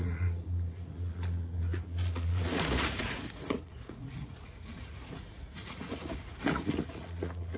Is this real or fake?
fake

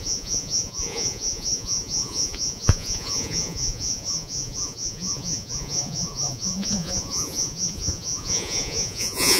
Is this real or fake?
fake